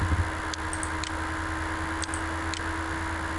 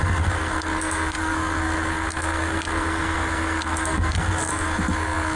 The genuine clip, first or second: first